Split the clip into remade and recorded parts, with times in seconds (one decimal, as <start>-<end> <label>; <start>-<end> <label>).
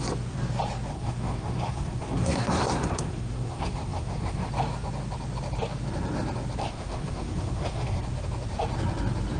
0.0-0.9 recorded; 0.9-4.5 remade; 4.5-6.6 recorded; 6.6-8.0 remade; 8.0-9.4 recorded